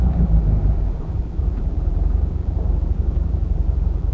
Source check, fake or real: fake